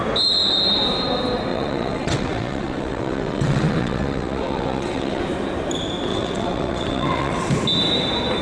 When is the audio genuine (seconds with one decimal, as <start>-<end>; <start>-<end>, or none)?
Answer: 0.0-1.5; 5.2-6.1; 7.5-8.4